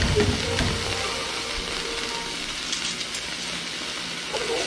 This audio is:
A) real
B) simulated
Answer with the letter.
A